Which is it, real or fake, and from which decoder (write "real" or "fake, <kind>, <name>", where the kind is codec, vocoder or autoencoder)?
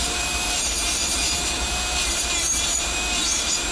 fake, vocoder, BigVGAN v2